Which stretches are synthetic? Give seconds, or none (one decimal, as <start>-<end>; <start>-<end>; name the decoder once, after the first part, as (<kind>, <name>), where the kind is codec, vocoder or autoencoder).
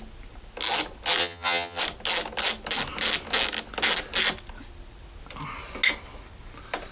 1.2-1.8 (vocoder, HiFi-GAN)